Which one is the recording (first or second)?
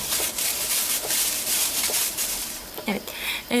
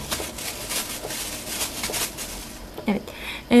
second